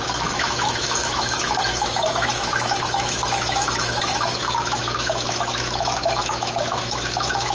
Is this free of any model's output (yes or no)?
no